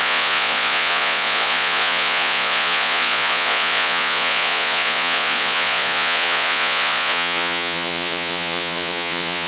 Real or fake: fake